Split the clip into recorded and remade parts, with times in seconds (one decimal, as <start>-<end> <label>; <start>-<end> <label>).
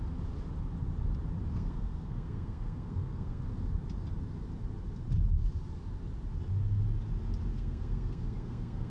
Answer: 0.0-1.5 recorded; 1.5-3.4 remade; 3.4-7.5 recorded; 7.5-8.9 remade